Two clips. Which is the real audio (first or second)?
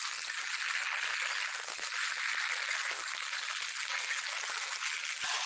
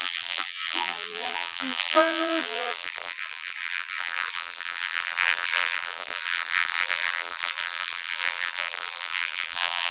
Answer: first